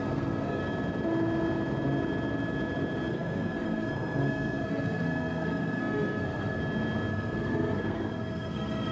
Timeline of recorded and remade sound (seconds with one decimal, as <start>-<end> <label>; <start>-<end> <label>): 0.0-0.6 remade; 0.6-3.1 recorded; 3.1-6.6 remade; 6.6-7.1 recorded; 7.1-8.9 remade